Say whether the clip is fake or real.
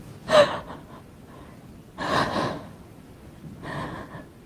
fake